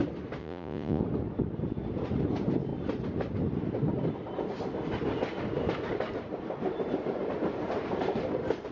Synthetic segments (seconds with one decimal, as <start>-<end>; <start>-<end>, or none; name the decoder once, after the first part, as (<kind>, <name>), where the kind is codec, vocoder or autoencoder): 0.4-1.0 (vocoder, Vocos)

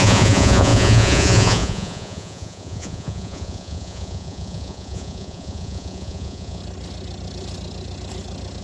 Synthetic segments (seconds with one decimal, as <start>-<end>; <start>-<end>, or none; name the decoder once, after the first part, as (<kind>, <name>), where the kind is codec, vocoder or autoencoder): 0.0-6.6 (vocoder, Vocos)

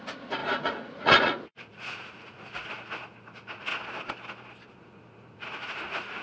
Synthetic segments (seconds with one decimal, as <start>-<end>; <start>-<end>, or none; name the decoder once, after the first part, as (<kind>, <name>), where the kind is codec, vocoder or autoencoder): 0.0-3.7 (vocoder, Vocos); 4.8-6.2

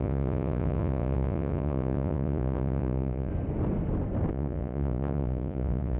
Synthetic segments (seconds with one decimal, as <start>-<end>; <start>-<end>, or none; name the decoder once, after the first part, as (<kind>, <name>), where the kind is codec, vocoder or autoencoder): 0.0-3.3 (vocoder, Vocos); 4.3-6.0

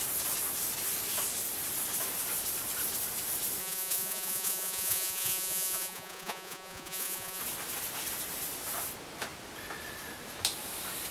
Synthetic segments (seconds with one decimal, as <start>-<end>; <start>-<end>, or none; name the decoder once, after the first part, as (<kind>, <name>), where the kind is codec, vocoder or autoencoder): 3.6-7.4 (vocoder, Vocos)

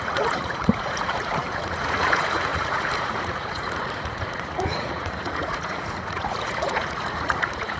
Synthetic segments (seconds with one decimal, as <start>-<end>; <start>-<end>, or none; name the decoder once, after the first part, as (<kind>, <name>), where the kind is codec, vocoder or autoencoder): 0.0-7.8 (vocoder, Vocos)